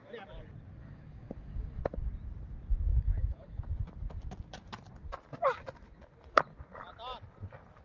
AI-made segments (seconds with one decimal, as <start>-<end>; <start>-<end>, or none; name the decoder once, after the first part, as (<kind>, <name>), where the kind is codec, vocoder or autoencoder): 0.8-1.8 (codec, DAC); 2.9-3.6